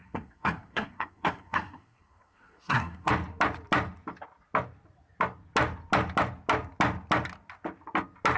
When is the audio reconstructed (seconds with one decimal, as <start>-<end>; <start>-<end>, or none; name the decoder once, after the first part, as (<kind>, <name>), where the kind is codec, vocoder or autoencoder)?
0.0-3.1 (codec, SNAC)